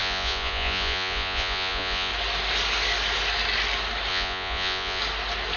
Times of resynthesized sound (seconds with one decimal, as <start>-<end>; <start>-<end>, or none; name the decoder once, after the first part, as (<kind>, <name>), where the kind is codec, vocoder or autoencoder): 0.0-2.1 (vocoder, Vocos); 4.1-5.0